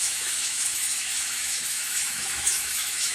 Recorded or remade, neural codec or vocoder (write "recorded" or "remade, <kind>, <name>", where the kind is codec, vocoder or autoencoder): remade, autoencoder, DAC-VAE